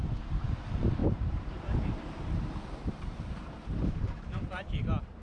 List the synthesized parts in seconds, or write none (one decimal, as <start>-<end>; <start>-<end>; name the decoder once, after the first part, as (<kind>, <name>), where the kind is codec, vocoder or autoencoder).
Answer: 0.0-5.2 (vocoder, BigVGAN v2)